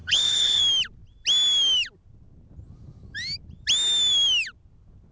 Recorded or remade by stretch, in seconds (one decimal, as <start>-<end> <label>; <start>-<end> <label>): 0.0-0.6 remade; 0.6-5.1 recorded